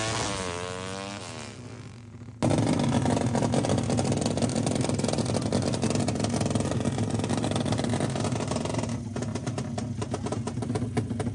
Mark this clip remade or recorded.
recorded